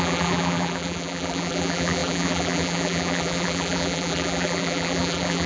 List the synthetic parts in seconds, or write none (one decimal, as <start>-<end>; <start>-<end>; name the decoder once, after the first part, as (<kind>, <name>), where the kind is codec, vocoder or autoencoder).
0.0-5.5 (vocoder, BigVGAN v2)